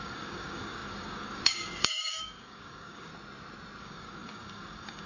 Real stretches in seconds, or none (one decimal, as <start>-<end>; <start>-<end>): 3.1-3.8